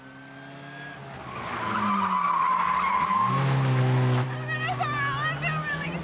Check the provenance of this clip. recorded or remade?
recorded